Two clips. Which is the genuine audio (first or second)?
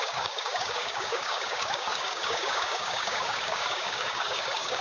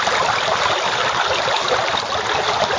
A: second